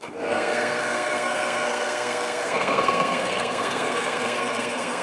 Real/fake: fake